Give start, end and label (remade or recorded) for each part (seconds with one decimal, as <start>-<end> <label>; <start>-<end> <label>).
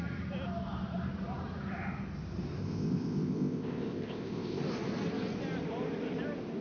0.0-2.6 recorded; 2.6-4.6 remade; 4.6-6.6 recorded